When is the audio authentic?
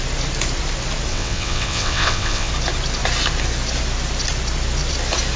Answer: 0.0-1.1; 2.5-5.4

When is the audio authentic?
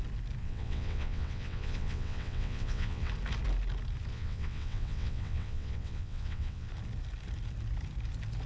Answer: 0.0-0.4; 3.1-4.1; 6.7-8.5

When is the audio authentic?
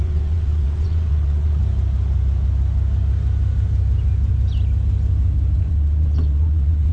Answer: 1.6-5.7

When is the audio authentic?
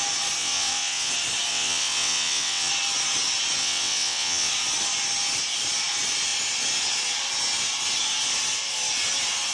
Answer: 0.0-0.4; 1.1-1.5; 2.7-3.6; 4.5-9.5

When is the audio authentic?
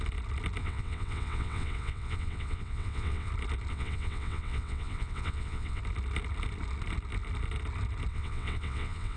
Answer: 0.0-0.6; 3.3-3.7; 5.8-8.1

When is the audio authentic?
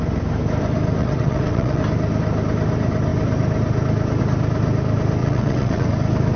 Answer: 0.0-1.0; 1.8-5.2; 5.9-6.4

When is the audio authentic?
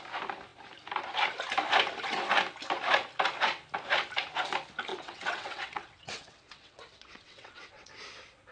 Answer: 0.0-4.9; 8.0-8.5